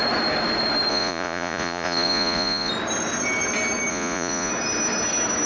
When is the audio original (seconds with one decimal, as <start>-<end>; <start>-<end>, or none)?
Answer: 0.0-0.9; 2.7-3.9; 4.5-5.5